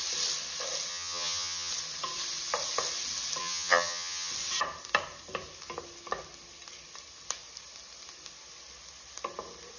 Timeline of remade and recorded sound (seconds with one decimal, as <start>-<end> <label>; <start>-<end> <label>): 0.0-0.9 recorded; 0.9-1.7 remade; 1.7-3.4 recorded; 3.4-4.3 remade; 4.3-9.8 recorded